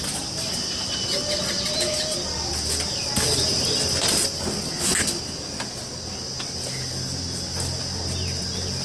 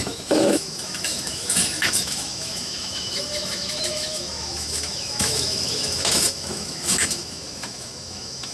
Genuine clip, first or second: first